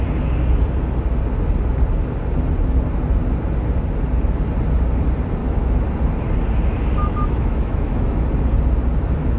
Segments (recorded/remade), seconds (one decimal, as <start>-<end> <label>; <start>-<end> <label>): 0.0-5.4 recorded; 5.4-5.9 remade; 5.9-7.0 recorded; 7.0-8.2 remade; 8.2-9.4 recorded